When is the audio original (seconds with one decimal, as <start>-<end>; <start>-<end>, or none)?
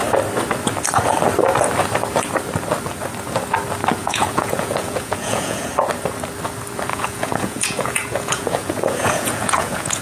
0.0-4.0; 5.7-6.9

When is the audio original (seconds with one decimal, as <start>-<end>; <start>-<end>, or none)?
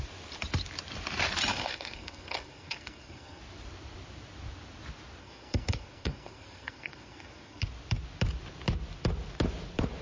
0.0-1.5; 3.4-5.2; 7.6-10.0